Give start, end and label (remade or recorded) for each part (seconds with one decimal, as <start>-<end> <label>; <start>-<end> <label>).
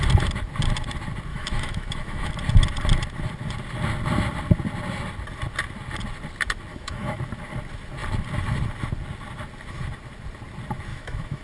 0.0-1.3 recorded; 1.3-2.3 remade; 2.3-6.7 recorded; 6.7-7.2 remade; 7.2-10.9 recorded; 10.9-11.4 remade